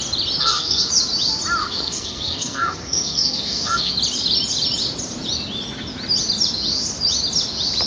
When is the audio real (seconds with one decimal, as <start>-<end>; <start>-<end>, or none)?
0.0-0.4; 0.9-1.6; 3.9-7.9